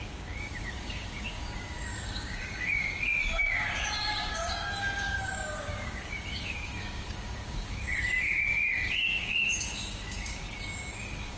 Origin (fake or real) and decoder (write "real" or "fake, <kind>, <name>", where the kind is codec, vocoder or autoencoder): fake, codec, DAC